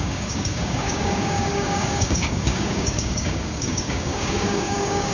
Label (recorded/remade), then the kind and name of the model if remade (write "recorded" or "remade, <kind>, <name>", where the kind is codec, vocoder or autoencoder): remade, codec, DAC